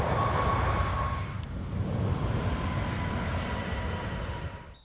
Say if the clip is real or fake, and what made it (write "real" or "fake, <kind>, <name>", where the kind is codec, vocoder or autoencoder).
real